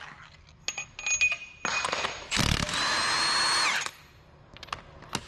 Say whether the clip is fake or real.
real